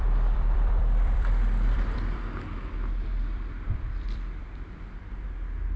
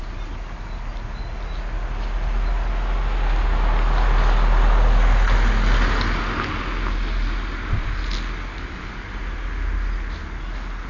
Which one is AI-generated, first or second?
first